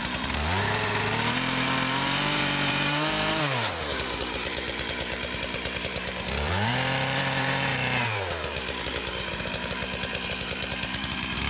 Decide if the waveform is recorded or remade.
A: remade